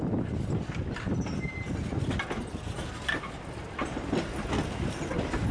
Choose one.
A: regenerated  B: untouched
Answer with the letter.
B